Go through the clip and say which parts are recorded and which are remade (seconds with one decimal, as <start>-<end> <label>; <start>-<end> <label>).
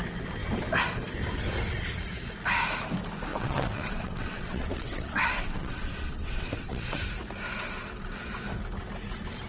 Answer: 0.0-3.3 recorded; 3.3-7.0 remade; 7.0-9.5 recorded